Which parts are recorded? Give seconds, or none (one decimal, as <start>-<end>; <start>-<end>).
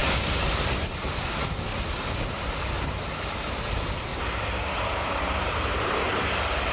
1.7-2.6